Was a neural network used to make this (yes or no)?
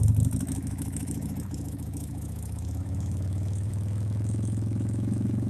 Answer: yes